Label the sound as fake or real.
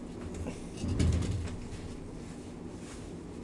real